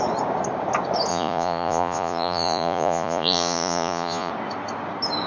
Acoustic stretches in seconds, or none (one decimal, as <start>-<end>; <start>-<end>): 0.0-1.1; 4.3-5.3